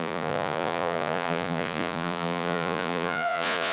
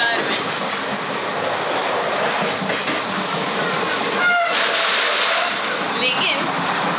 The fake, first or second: first